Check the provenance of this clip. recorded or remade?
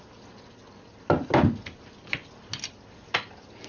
recorded